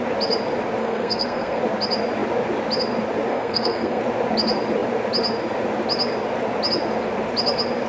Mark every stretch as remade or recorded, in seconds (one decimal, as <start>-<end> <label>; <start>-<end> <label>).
0.0-0.8 recorded; 0.8-1.6 remade; 1.6-3.3 recorded; 3.3-4.0 remade; 4.0-7.9 recorded